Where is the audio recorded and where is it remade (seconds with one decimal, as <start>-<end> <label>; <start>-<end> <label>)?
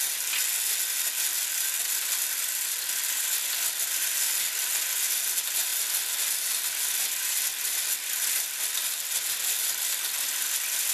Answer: 0.0-10.9 recorded